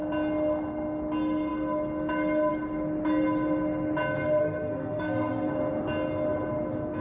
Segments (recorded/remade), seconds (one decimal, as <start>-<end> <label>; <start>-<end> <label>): 0.0-4.4 recorded; 4.4-5.5 remade; 5.5-7.0 recorded